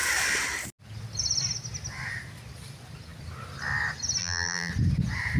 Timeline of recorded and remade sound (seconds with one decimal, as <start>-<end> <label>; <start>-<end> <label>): 0.0-4.2 recorded; 4.2-4.7 remade; 4.7-5.4 recorded